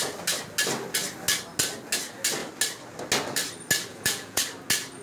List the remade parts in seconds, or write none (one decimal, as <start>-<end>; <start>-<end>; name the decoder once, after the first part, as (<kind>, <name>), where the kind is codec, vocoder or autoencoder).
3.9-4.4 (vocoder, Vocos)